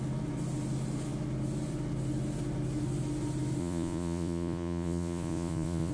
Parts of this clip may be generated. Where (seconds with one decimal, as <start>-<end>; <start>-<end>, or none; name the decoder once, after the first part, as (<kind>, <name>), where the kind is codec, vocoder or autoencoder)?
3.6-5.9 (vocoder, Vocos)